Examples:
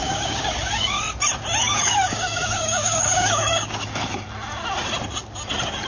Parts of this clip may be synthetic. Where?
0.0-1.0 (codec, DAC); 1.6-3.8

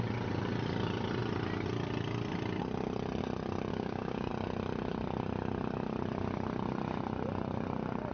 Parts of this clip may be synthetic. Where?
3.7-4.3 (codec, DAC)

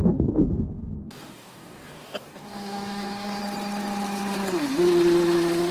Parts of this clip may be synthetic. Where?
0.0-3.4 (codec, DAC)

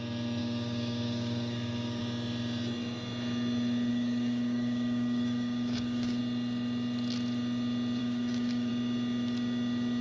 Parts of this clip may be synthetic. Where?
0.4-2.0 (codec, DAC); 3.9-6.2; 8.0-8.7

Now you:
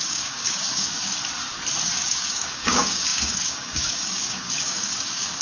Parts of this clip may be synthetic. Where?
0.0-1.2 (codec, DAC); 1.9-5.4